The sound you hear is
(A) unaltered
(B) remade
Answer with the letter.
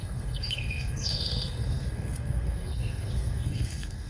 B